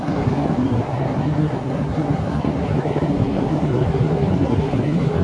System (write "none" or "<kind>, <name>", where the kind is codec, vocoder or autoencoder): codec, SNAC